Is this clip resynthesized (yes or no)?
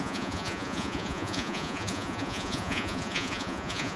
yes